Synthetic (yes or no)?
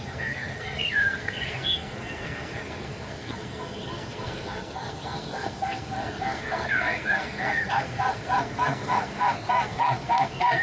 yes